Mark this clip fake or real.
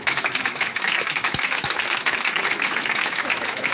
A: fake